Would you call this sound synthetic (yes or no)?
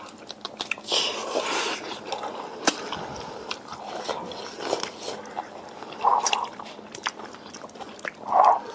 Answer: no